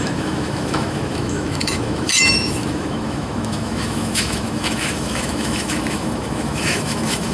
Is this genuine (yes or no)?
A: no